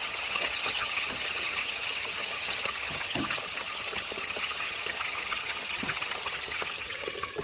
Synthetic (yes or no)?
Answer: yes